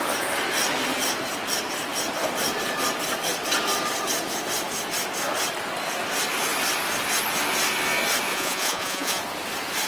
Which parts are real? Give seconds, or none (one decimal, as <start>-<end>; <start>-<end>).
0.0-8.3; 9.2-9.9